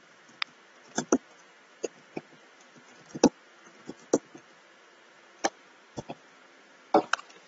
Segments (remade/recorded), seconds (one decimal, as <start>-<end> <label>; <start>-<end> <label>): 0.0-1.4 recorded; 1.4-5.2 remade; 5.2-7.5 recorded